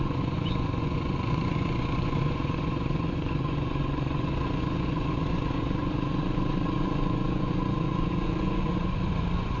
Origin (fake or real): fake